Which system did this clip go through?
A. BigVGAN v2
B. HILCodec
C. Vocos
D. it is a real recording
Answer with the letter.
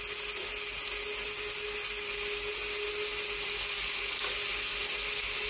D